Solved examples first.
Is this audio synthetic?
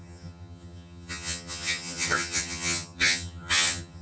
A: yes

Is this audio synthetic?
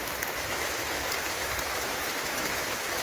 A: yes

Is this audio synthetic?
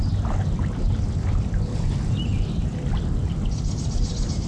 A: no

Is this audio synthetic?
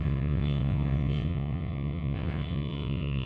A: yes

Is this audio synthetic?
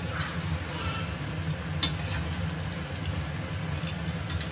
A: no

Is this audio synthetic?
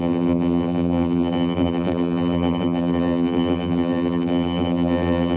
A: yes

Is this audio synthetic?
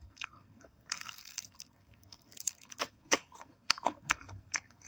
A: yes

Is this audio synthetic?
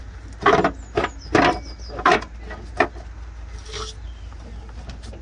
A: no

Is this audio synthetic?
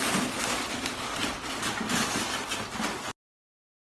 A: no